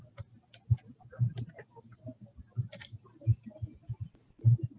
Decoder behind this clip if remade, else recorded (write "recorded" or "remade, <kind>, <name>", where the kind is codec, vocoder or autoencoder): recorded